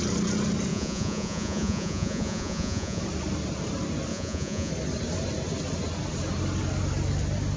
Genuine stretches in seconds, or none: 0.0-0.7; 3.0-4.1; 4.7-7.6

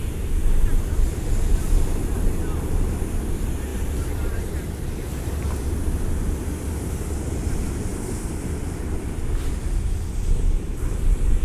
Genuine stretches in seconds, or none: 0.0-3.7; 4.5-7.9; 9.2-11.4

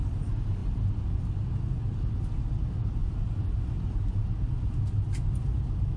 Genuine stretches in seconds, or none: 0.0-6.0

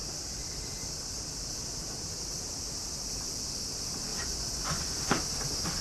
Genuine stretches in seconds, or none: 0.0-4.1; 5.1-5.8

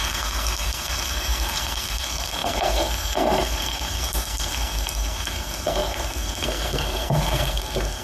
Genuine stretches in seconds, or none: none

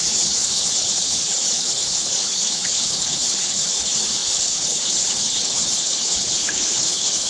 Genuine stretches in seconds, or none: none

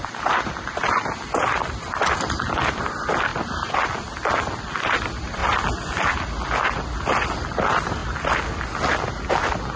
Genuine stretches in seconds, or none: 0.0-9.8

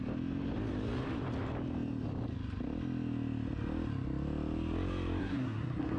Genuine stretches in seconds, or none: 0.0-5.2